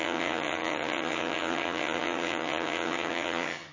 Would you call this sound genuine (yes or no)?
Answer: no